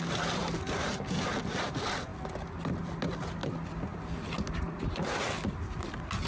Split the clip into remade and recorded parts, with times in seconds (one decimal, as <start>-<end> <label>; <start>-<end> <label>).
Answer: 0.0-6.3 recorded